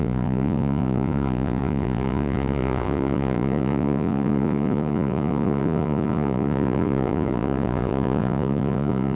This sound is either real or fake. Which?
fake